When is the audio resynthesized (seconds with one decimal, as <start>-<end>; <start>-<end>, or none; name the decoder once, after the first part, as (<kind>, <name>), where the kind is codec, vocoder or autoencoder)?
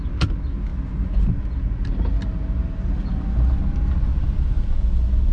none